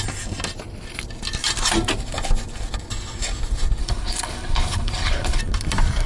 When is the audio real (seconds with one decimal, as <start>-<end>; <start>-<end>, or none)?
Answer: 0.0-3.8; 5.4-6.1